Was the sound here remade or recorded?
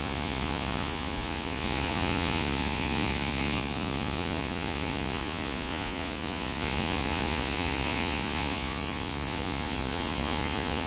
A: remade